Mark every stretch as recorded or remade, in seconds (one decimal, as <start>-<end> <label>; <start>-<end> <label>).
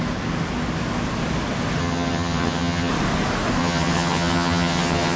0.0-1.8 recorded; 1.8-2.9 remade; 2.9-3.6 recorded; 3.6-5.2 remade